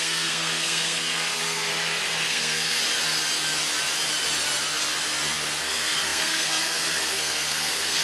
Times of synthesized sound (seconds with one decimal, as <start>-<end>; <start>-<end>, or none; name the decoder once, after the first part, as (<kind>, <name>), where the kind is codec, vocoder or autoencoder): 0.0-1.7 (codec, SNAC); 2.3-2.8; 5.6-8.0